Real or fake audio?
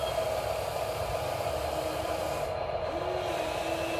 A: real